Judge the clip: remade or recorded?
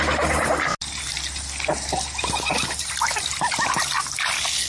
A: recorded